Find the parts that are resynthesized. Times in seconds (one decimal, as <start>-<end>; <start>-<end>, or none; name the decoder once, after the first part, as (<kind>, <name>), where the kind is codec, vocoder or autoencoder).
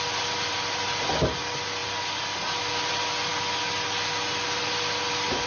none